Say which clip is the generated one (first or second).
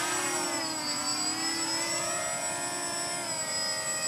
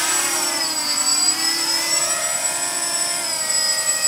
second